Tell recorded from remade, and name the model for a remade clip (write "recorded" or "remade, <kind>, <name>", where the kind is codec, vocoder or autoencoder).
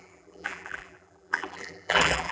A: remade, vocoder, BigVGAN v2